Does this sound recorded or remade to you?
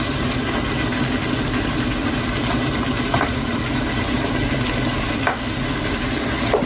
recorded